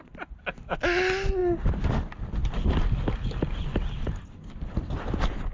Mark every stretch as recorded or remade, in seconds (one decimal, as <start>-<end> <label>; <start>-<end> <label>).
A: 0.0-5.5 recorded